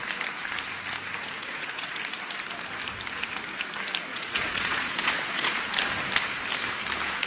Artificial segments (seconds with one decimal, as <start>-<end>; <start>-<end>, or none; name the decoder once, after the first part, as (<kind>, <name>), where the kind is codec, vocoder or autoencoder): 1.4-2.0 (vocoder, Vocos); 4.1-5.6